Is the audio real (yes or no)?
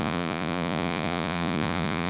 no